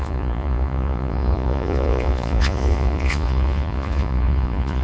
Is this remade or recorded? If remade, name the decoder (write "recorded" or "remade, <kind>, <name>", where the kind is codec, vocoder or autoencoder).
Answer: remade, vocoder, Vocos